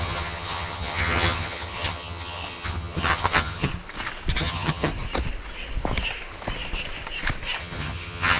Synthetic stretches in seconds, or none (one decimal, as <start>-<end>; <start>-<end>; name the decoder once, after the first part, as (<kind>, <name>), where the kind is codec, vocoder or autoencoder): 0.0-3.7 (vocoder, HiFi-GAN); 4.4-4.9; 7.6-8.4